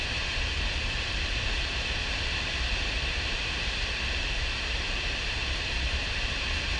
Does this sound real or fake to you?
fake